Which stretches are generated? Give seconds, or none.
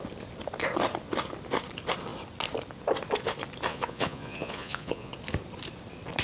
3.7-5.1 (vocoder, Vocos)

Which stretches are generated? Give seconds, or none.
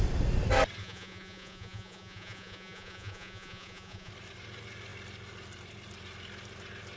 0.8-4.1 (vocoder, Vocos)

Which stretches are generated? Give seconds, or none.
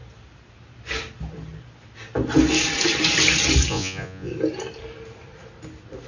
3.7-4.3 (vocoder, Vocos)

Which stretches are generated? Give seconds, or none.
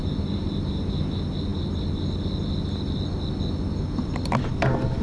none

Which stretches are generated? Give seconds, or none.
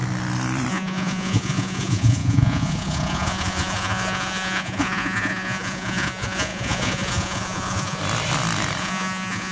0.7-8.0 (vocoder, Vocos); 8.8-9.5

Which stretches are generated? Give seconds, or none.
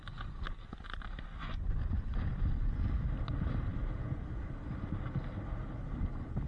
1.4-2.8 (vocoder, Vocos)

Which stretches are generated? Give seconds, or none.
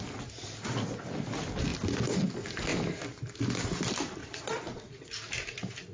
4.2-5.1 (vocoder, Vocos)